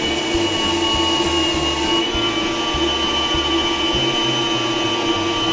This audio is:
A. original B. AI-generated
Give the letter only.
A